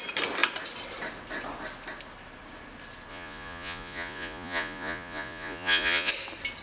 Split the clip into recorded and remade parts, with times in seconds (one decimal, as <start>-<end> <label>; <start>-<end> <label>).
0.0-3.1 recorded; 3.1-6.1 remade; 6.1-6.6 recorded